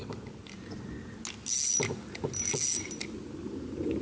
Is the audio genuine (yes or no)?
yes